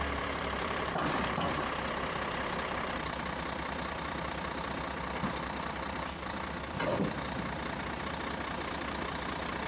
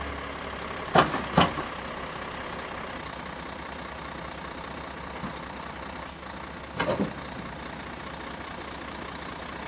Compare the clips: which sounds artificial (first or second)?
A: first